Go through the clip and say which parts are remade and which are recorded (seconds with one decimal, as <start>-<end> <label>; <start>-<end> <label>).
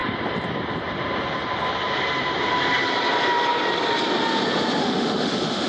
0.0-4.8 recorded; 4.8-5.7 remade